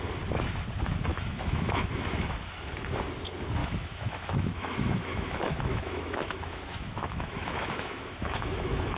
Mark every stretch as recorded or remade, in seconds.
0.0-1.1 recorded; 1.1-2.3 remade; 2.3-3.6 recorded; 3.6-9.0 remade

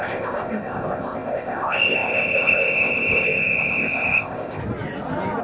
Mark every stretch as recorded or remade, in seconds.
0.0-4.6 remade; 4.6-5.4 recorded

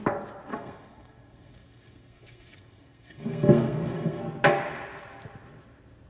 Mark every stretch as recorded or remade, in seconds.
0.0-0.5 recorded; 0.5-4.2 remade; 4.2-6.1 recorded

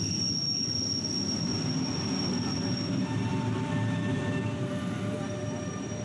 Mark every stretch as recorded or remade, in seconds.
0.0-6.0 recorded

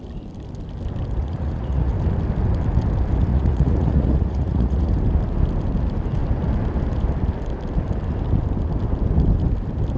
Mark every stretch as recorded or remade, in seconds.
0.0-1.2 recorded; 1.2-1.9 remade; 1.9-3.3 recorded; 3.3-5.0 remade; 5.0-10.0 recorded

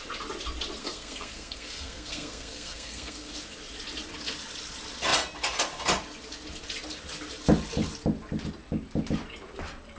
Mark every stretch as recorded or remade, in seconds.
0.0-0.8 recorded; 0.8-3.3 remade; 3.3-10.0 recorded

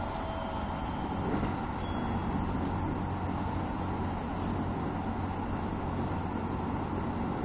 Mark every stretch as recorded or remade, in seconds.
0.0-7.4 recorded

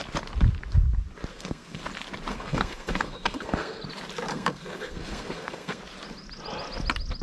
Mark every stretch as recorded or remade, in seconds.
0.0-1.3 recorded; 1.3-1.8 remade; 1.8-2.3 recorded; 2.3-3.8 remade; 3.8-4.3 recorded; 4.3-5.8 remade; 5.8-7.2 recorded